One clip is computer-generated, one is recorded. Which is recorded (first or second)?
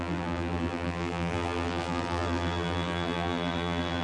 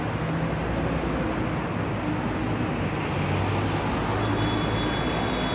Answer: second